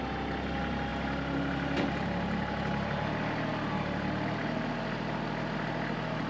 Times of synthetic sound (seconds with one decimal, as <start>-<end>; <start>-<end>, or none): none